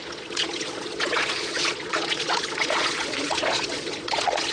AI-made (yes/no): yes